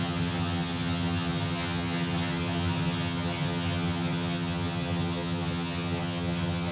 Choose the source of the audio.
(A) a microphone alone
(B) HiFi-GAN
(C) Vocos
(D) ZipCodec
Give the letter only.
B